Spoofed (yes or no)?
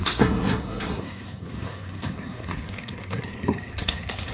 yes